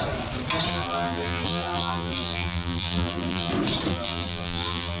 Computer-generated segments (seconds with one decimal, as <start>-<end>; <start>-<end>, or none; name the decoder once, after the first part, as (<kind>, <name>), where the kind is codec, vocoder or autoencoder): 0.7-3.5 (vocoder, BigVGAN v2); 3.9-5.0